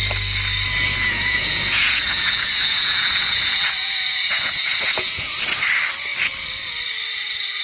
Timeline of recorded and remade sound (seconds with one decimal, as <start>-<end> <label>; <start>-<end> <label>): 0.0-0.9 recorded; 0.9-5.4 remade; 5.4-7.6 recorded